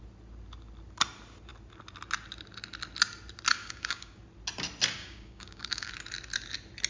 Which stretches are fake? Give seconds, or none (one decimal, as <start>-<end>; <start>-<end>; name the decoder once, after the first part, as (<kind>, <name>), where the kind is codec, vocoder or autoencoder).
3.6-4.2 (codec, DAC); 5.0-5.9